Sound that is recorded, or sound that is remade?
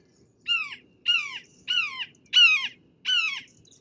recorded